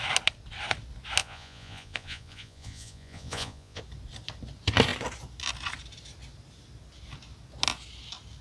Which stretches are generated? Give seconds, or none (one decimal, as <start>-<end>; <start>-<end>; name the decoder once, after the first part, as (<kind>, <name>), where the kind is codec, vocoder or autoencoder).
1.2-3.8 (vocoder, Vocos)